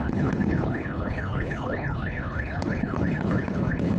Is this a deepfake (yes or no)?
yes